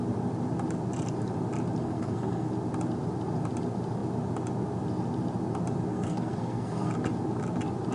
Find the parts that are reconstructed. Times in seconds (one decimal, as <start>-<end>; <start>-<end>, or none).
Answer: 1.8-2.5; 5.9-6.9

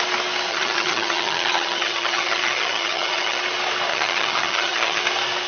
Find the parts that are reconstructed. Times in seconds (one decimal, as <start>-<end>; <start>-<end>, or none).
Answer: 0.5-3.4; 3.9-5.0

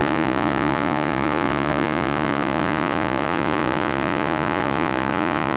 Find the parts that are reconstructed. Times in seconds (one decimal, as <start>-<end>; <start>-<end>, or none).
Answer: 0.0-5.6